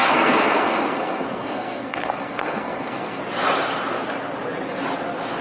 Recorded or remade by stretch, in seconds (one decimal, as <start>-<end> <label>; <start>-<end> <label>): 0.0-3.2 remade; 3.2-5.4 recorded